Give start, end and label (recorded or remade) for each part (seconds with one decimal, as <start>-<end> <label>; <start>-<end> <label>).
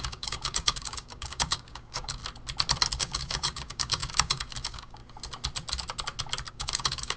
0.0-2.2 remade; 2.2-3.0 recorded; 3.0-5.0 remade; 5.0-6.5 recorded; 6.5-7.2 remade